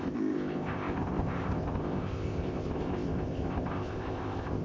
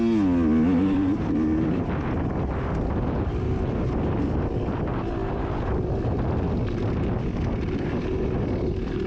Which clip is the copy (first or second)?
first